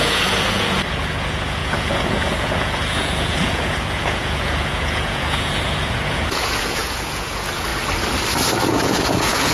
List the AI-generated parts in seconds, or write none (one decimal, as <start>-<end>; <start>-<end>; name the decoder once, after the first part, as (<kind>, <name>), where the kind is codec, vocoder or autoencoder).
0.0-7.7 (vocoder, Vocos); 8.7-9.5